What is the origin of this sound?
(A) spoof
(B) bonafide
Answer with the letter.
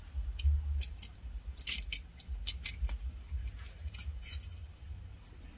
B